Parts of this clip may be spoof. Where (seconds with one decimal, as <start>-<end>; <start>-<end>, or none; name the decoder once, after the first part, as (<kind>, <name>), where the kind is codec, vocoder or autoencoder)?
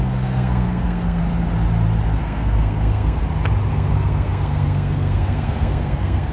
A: 0.0-1.2 (codec, SNAC); 2.2-3.2; 3.7-6.3